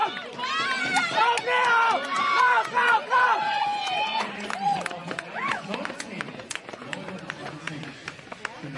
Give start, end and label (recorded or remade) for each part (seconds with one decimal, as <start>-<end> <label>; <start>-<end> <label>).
0.0-2.2 recorded; 2.2-8.0 remade; 8.0-8.8 recorded